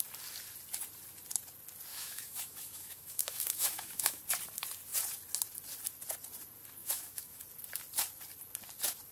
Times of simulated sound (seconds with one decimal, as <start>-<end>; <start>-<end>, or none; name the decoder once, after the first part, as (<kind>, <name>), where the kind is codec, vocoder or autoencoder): 1.9-4.2 (autoencoder, DAC-VAE); 6.8-7.4